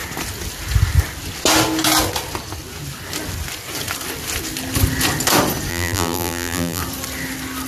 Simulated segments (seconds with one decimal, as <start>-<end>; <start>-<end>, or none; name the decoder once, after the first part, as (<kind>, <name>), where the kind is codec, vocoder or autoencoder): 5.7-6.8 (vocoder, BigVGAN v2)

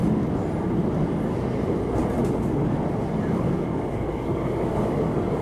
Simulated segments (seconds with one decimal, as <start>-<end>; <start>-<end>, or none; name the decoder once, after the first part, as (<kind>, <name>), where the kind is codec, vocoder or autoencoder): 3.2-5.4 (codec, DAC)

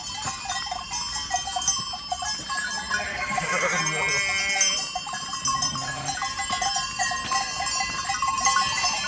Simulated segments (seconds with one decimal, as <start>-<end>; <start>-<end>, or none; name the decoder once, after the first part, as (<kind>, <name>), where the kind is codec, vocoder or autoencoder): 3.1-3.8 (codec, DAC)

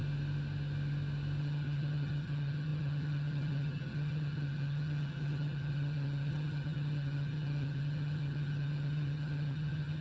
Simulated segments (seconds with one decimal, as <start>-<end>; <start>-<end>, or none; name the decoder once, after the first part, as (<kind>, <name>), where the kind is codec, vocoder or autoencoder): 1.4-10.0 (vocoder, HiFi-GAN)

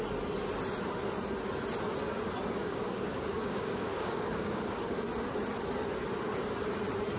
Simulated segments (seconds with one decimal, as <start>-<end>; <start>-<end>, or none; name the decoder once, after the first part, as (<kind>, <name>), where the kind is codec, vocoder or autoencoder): 2.6-5.0 (codec, DAC)

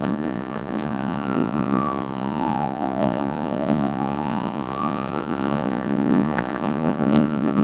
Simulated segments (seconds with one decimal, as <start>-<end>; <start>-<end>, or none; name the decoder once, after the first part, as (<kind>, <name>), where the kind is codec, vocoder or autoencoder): 0.0-7.6 (vocoder, Vocos)

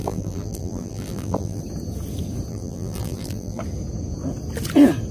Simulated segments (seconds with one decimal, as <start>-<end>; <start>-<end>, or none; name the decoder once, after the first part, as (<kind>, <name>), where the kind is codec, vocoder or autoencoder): 0.0-1.6 (vocoder, BigVGAN v2); 2.5-3.6